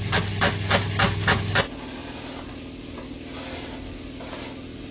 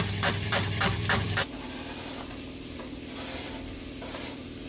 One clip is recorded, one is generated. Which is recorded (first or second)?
first